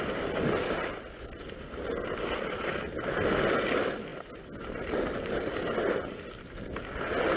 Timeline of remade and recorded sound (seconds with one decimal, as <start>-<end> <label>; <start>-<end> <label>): 0.0-7.4 recorded

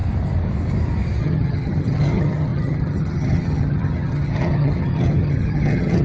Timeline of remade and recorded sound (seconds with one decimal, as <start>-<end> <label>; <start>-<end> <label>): 0.0-1.2 recorded; 1.2-6.0 remade